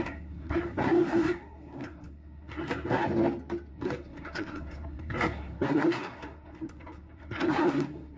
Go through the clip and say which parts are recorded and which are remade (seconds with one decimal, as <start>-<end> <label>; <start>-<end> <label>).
0.0-3.0 remade; 3.0-3.7 recorded; 3.7-8.2 remade